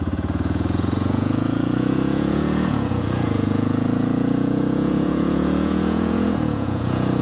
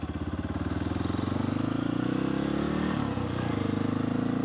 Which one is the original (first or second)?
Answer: second